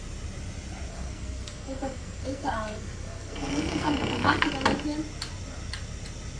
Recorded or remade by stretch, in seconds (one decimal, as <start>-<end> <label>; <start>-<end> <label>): 0.0-0.9 recorded; 0.9-4.5 remade; 4.5-6.4 recorded